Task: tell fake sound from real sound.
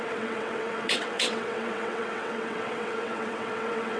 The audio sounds fake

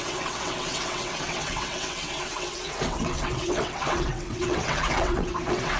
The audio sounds fake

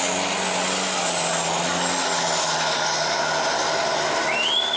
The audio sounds real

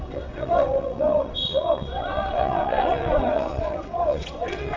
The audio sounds fake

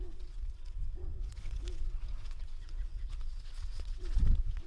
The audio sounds fake